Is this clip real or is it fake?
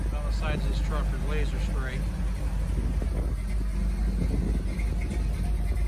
real